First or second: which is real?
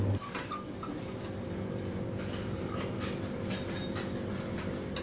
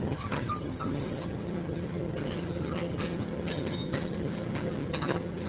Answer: first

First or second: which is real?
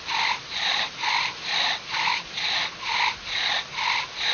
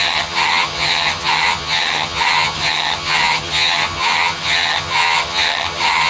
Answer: first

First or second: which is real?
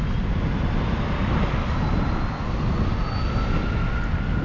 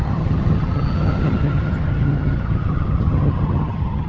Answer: first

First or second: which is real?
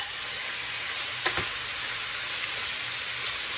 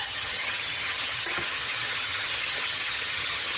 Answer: first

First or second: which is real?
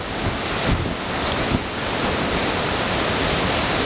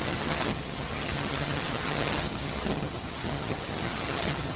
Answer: first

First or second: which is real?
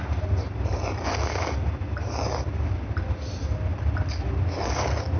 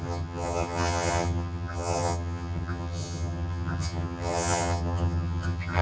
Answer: first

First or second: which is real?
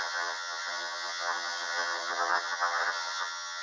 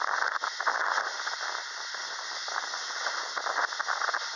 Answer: second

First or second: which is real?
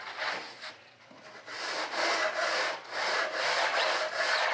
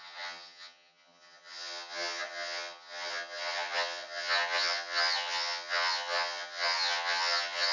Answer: first